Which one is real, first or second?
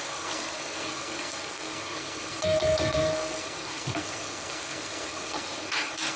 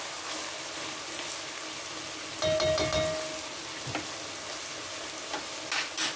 second